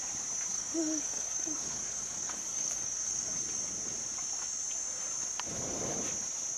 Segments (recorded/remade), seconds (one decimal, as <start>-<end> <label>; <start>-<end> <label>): 0.0-0.5 recorded; 0.5-3.4 remade; 3.4-6.6 recorded